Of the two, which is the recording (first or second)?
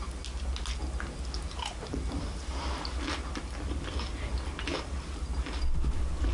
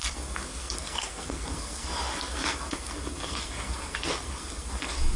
first